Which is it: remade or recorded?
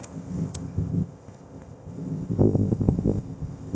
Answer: remade